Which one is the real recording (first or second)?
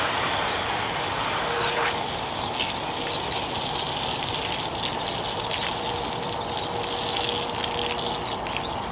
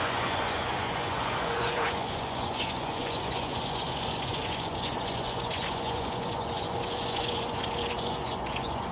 first